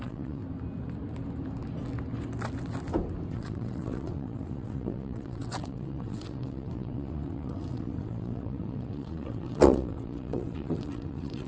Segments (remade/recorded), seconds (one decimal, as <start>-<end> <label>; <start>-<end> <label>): 0.0-0.4 remade; 0.4-3.3 recorded; 3.3-11.5 remade